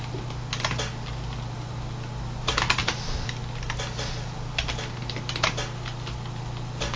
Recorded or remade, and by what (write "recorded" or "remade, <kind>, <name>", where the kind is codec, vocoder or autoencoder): recorded